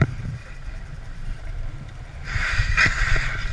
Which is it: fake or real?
fake